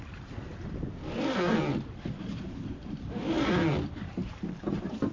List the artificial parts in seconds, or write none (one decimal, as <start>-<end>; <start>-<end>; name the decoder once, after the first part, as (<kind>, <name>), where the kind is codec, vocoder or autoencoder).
0.0-0.5 (vocoder, BigVGAN v2); 2.0-3.2; 4.1-5.1